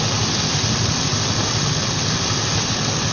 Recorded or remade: recorded